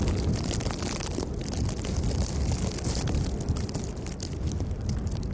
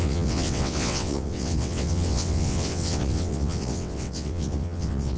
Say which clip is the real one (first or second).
first